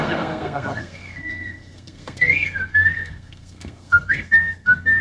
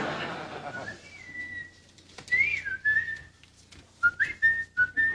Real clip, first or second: second